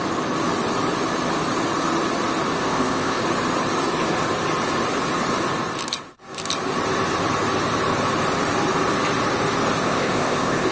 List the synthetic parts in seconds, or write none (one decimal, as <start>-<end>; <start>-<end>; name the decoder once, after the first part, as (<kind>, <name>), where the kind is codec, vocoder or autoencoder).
2.6-3.2 (codec, ZipCodec); 9.8-10.7